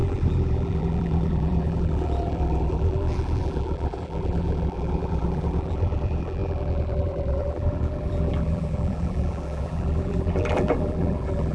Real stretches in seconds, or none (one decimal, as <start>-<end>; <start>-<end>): none